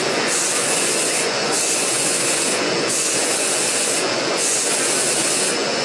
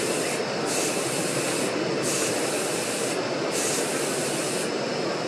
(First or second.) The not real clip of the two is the first